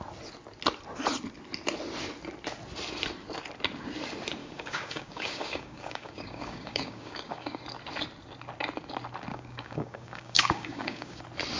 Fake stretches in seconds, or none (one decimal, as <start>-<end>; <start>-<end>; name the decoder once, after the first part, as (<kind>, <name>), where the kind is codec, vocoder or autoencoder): 4.4-7.6 (codec, DAC); 9.3-11.2

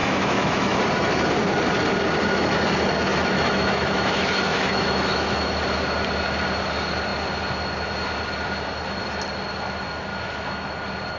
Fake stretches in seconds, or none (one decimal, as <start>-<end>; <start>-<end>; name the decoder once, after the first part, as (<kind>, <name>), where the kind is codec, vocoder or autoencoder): 0.0-0.8 (autoencoder, DAC-VAE); 3.1-5.5; 10.1-10.7

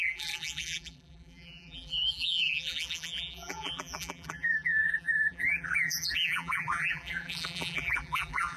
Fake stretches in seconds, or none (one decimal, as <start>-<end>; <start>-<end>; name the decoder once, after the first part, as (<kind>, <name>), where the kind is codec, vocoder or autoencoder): 0.0-8.6 (vocoder, BigVGAN v2)

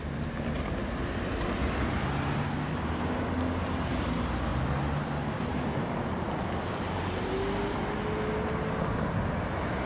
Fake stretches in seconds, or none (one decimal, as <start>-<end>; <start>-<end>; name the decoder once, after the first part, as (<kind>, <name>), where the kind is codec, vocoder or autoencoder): none